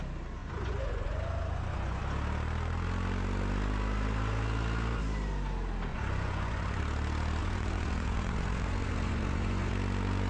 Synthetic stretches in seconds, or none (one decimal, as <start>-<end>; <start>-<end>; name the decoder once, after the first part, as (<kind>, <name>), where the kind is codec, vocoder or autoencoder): 0.4-2.0 (vocoder, Vocos); 5.9-6.8; 7.4-9.7